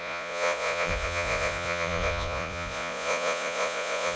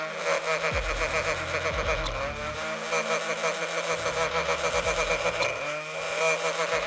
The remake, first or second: first